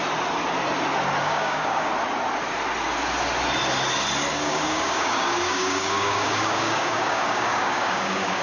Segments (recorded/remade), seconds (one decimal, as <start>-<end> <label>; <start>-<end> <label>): 0.0-1.2 recorded; 1.2-1.9 remade; 1.9-4.3 recorded; 4.3-8.4 remade